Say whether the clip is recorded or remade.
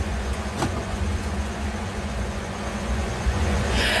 remade